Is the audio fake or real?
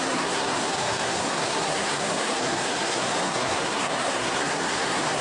fake